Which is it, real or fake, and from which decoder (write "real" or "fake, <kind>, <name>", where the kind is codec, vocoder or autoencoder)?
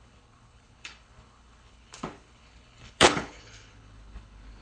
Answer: fake, codec, HILCodec